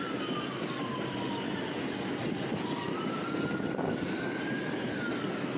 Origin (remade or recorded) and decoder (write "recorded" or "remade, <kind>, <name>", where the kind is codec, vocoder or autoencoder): recorded